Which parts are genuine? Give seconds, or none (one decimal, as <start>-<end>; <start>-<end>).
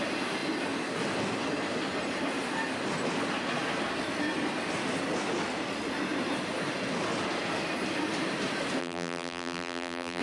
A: 0.0-8.8